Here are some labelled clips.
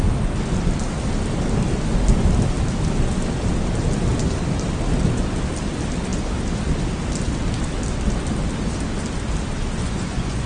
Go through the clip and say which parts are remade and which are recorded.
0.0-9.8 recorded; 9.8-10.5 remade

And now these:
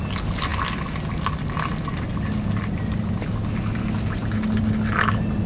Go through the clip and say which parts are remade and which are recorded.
0.0-5.5 recorded

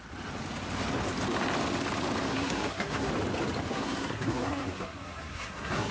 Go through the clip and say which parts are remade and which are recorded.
0.0-2.3 recorded; 2.3-3.1 remade; 3.1-3.7 recorded; 3.7-5.9 remade

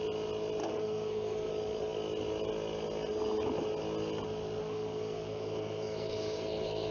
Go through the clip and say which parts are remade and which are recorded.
0.0-0.6 recorded; 0.6-1.5 remade; 1.5-4.6 recorded; 4.6-6.9 remade